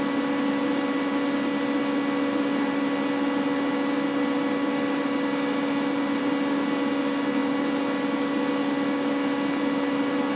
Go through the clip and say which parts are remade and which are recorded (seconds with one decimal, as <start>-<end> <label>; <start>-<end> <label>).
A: 0.0-10.4 recorded